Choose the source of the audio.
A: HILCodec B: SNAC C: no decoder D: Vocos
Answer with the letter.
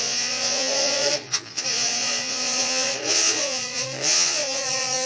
D